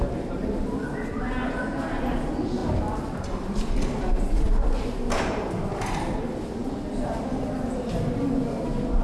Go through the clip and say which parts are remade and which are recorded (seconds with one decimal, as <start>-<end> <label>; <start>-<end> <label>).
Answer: 0.0-9.0 recorded